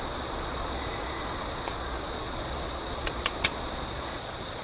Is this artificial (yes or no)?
yes